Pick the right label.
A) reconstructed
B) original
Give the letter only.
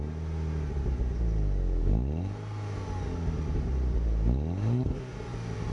B